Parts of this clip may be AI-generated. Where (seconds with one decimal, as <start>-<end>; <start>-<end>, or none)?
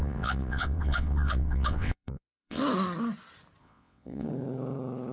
0.0-2.6; 3.6-4.3